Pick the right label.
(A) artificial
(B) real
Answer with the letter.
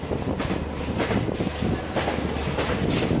B